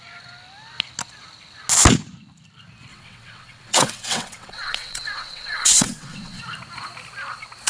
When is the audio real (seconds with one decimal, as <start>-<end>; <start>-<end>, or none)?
0.0-2.9; 6.4-7.7